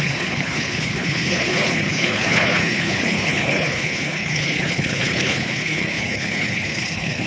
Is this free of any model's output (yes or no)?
no